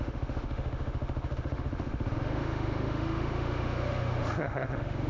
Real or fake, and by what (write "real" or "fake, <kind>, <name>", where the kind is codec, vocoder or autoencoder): fake, autoencoder, DAC-VAE